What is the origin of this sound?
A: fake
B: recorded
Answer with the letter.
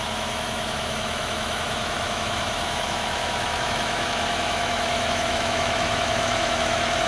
A